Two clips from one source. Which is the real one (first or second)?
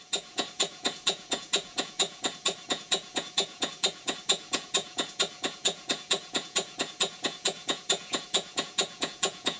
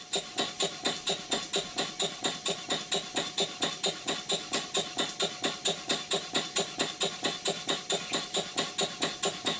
second